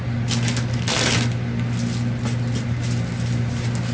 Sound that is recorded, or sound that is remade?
recorded